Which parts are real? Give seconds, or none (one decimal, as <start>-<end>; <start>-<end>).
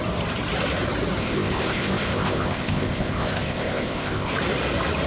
0.0-1.2; 4.3-5.1